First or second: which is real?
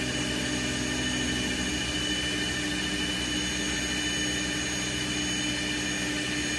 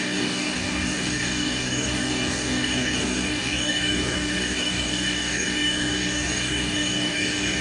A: first